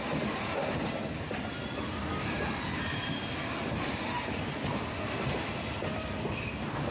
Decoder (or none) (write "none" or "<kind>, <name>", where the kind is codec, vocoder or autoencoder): none